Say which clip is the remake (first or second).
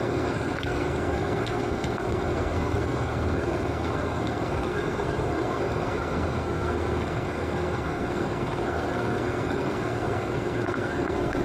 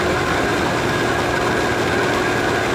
first